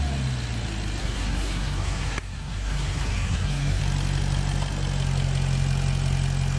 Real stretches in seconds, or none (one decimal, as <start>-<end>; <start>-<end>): 0.0-1.0; 3.8-6.6